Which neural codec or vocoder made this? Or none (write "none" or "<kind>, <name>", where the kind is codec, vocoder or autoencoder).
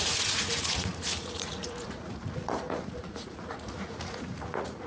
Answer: vocoder, Vocos